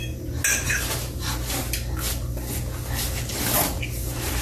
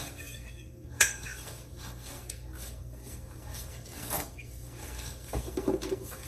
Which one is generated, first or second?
second